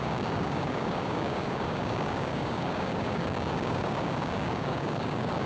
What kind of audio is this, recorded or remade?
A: remade